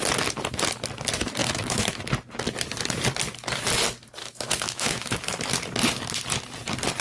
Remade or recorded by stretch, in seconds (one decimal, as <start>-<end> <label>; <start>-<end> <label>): 0.0-1.4 recorded; 1.4-2.0 remade; 2.0-4.2 recorded; 4.2-5.2 remade; 5.2-7.0 recorded